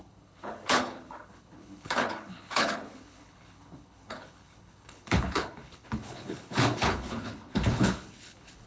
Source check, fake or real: fake